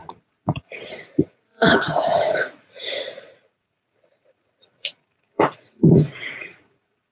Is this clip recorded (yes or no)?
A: no